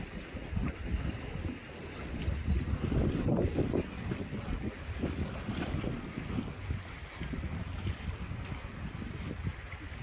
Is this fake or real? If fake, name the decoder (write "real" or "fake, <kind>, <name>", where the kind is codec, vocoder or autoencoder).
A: real